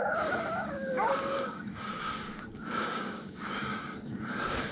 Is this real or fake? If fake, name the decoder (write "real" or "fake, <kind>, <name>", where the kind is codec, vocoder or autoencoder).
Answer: fake, codec, DAC